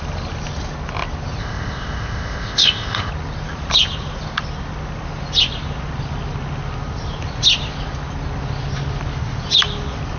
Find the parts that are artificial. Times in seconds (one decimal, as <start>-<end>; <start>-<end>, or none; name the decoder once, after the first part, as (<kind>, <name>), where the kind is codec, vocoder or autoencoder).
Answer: 1.4-3.1 (codec, ZipCodec)